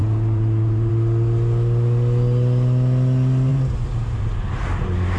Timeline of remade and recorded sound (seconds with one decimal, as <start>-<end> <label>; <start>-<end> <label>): 0.0-0.9 remade; 0.9-3.5 recorded; 3.5-4.4 remade; 4.4-5.2 recorded